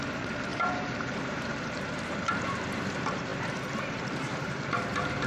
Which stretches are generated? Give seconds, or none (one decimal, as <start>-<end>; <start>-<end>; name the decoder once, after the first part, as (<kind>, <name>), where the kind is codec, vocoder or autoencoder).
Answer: 0.0-5.3 (vocoder, BigVGAN v2)